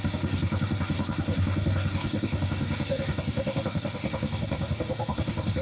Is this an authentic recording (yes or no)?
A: no